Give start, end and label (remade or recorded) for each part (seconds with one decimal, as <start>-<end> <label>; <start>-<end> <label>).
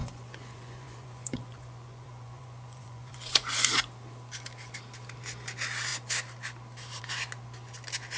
0.0-3.7 remade; 3.7-8.2 recorded